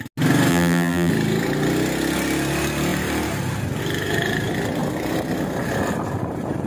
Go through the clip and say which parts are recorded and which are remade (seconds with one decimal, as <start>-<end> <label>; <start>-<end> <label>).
0.0-0.5 recorded; 0.5-1.1 remade; 1.1-6.7 recorded